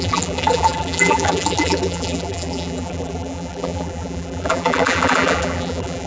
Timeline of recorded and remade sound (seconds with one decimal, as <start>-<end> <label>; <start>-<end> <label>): 0.0-6.1 remade